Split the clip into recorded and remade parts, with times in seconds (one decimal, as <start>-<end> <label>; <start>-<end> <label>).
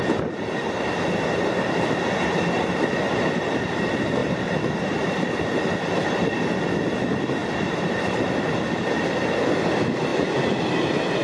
0.0-4.2 recorded; 4.2-6.5 remade; 6.5-7.4 recorded; 7.4-8.5 remade; 8.5-11.2 recorded